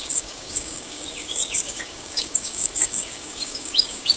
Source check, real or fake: fake